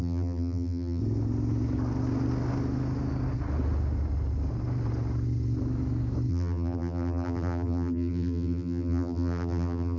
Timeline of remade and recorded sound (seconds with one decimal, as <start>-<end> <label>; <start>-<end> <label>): 0.0-1.0 remade; 1.0-6.3 recorded; 6.3-10.0 remade